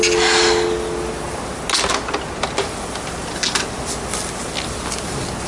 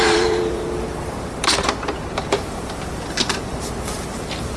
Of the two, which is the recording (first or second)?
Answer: first